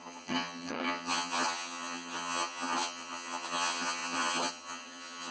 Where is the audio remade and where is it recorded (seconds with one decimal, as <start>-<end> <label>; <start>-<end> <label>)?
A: 0.0-5.3 remade